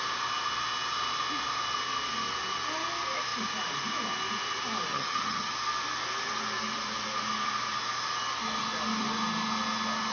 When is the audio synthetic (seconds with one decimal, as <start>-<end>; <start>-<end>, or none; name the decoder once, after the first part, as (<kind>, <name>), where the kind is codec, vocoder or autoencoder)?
4.9-5.5 (vocoder, HiFi-GAN)